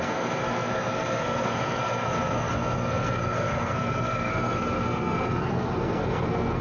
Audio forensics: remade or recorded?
remade